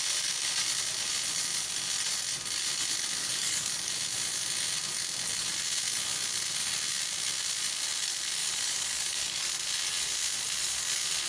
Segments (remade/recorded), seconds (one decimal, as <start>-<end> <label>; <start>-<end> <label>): 0.0-3.2 recorded; 3.2-3.9 remade; 3.9-8.4 recorded; 8.4-9.4 remade; 9.4-11.3 recorded